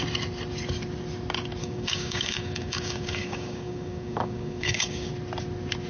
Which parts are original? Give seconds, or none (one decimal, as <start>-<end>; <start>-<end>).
0.0-1.6; 5.1-5.9